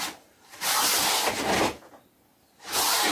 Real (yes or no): yes